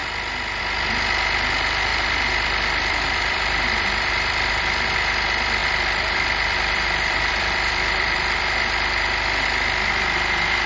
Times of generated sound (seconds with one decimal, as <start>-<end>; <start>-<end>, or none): 1.9-4.9; 5.6-8.4